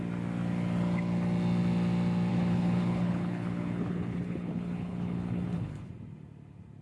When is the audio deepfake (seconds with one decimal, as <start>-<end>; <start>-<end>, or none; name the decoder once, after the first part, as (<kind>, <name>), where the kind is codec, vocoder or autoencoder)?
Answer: 2.3-5.9 (codec, HILCodec)

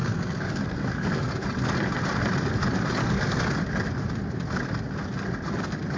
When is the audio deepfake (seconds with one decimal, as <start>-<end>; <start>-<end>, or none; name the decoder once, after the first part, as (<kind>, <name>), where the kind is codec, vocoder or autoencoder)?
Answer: 0.0-1.3 (codec, SNAC); 3.0-3.6